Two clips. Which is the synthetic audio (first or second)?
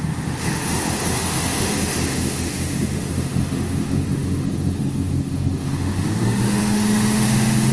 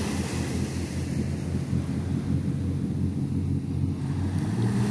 first